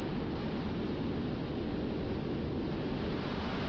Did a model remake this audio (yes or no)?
no